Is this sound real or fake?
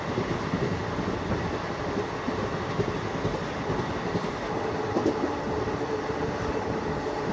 real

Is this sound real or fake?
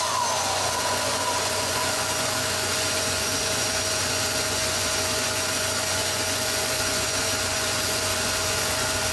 fake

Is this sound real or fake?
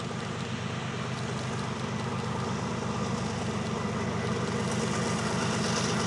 real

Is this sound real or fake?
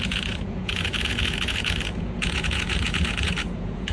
fake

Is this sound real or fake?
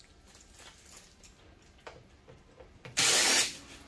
real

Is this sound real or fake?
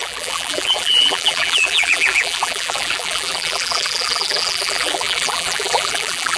fake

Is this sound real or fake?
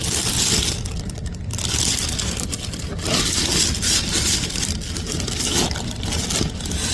real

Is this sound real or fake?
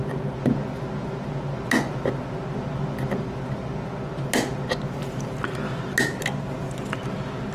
real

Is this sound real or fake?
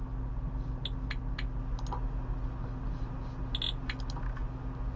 real